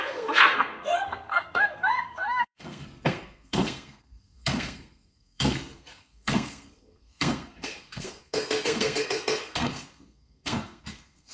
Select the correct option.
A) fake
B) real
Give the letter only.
A